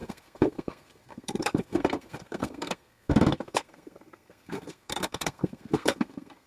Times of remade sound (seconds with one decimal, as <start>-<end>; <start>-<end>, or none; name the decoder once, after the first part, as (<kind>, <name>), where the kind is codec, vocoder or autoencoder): 0.0-6.5 (codec, SNAC)